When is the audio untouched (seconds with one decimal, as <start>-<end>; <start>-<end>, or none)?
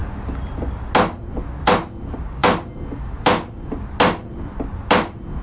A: 0.0-5.4